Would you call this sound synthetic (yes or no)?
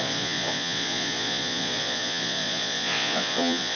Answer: yes